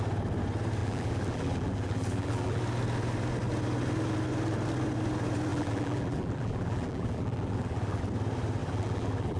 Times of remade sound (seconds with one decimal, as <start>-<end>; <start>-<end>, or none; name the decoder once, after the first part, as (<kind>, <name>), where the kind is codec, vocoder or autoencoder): 0.8-2.6 (vocoder, BigVGAN v2); 5.5-8.0; 8.6-9.4